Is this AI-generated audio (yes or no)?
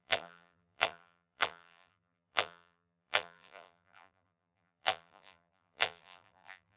yes